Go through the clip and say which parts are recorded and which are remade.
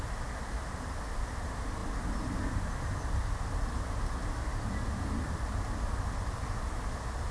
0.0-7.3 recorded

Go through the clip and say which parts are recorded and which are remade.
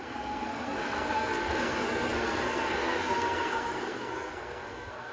0.0-5.1 remade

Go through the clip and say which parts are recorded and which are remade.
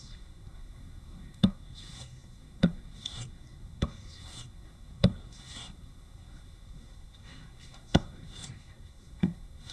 0.0-9.7 remade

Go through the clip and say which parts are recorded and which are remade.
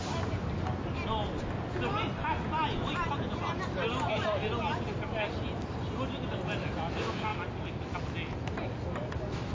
0.0-9.5 recorded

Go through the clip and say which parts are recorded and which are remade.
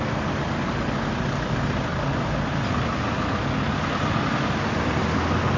0.0-5.6 recorded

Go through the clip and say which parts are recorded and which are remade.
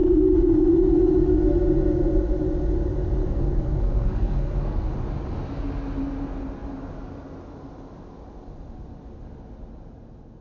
0.0-3.2 recorded; 3.2-4.9 remade; 4.9-10.4 recorded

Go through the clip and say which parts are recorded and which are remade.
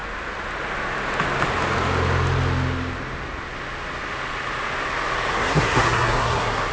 0.0-5.3 recorded; 5.3-6.7 remade